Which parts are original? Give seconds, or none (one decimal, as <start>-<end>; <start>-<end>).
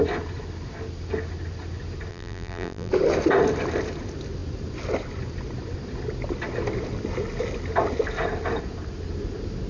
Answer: 0.0-2.1; 2.9-9.7